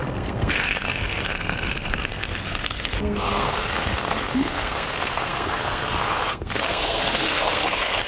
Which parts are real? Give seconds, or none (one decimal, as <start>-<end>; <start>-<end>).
none